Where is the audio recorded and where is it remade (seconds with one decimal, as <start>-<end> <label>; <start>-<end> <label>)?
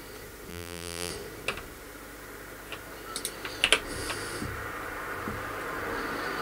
0.0-0.5 recorded; 0.5-1.1 remade; 1.1-6.4 recorded